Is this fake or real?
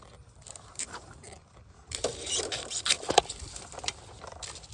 fake